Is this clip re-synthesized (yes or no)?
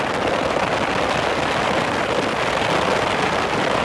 no